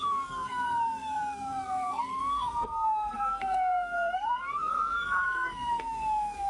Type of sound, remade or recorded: remade